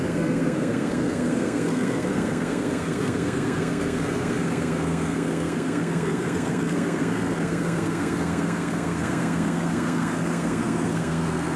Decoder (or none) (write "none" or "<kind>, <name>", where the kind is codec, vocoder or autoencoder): codec, SNAC